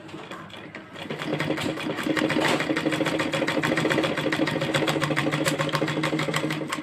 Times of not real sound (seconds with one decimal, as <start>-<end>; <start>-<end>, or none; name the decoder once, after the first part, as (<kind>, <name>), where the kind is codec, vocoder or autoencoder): none